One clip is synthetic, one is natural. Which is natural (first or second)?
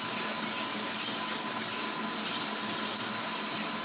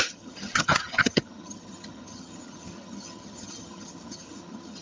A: first